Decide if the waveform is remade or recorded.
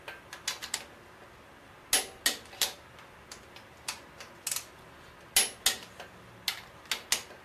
recorded